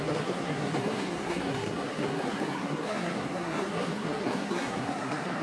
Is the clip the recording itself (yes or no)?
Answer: no